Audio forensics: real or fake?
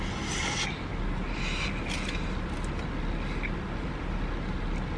real